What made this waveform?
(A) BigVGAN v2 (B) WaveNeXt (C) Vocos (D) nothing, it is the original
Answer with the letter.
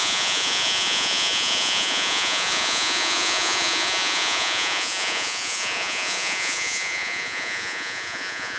C